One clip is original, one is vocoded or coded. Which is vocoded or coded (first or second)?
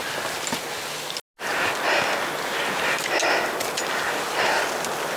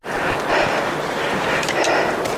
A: second